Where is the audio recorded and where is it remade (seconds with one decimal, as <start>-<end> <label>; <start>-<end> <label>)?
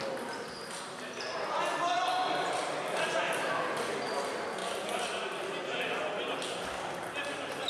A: 0.0-7.7 recorded